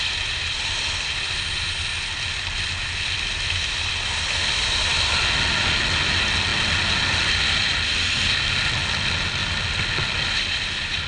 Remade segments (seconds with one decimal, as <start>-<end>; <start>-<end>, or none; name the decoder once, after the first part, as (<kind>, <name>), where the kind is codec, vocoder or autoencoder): none